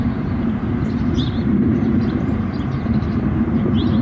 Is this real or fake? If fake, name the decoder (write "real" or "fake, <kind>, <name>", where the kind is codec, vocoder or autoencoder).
fake, vocoder, BigVGAN v2